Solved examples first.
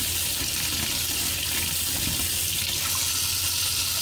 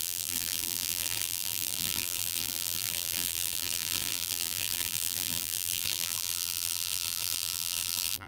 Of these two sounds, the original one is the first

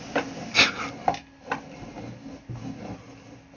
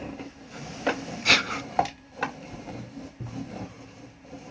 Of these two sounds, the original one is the first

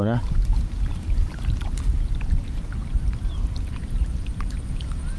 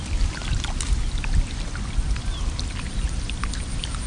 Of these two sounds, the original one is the second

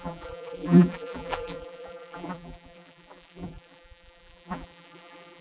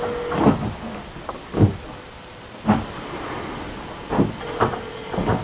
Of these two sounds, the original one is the second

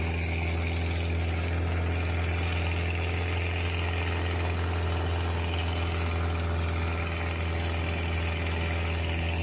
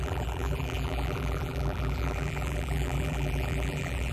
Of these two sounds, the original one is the first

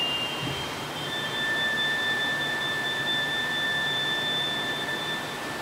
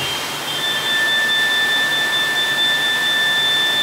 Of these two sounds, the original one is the second